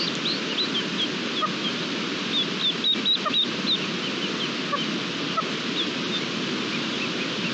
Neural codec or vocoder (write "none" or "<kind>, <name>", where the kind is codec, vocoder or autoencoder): none